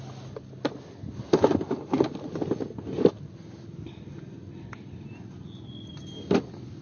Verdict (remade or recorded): recorded